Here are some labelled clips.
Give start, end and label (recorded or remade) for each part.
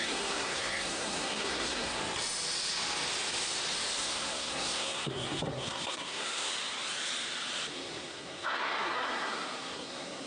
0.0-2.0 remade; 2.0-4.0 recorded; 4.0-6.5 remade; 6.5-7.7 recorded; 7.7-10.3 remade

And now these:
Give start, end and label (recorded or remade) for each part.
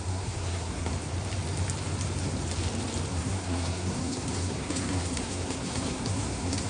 0.0-0.9 remade; 0.9-3.1 recorded; 3.1-6.7 remade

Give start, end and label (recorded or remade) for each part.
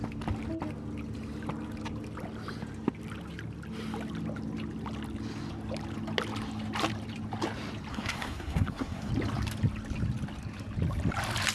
0.0-7.9 recorded; 7.9-9.1 remade; 9.1-11.5 recorded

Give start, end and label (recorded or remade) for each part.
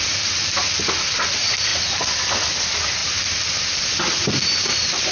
0.0-5.1 recorded